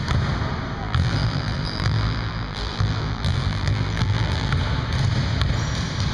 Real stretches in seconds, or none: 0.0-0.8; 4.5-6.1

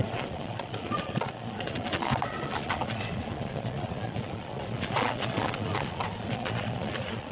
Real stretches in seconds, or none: none

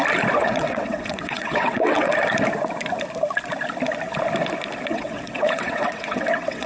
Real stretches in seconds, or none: 0.0-0.4; 2.1-4.9

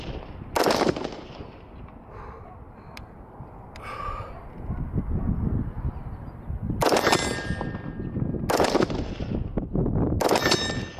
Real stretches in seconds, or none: 0.0-11.0

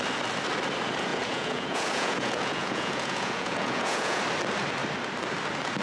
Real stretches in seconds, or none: 0.0-1.1; 4.2-5.8